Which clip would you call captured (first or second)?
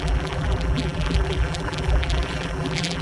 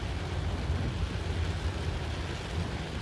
second